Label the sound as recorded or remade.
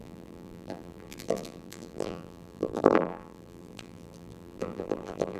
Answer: remade